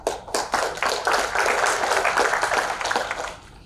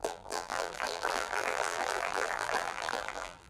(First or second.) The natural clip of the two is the first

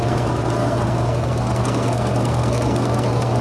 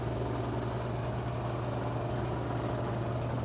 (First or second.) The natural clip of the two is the second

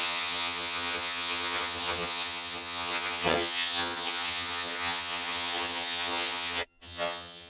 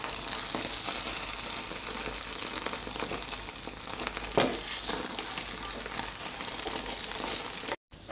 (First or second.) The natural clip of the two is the second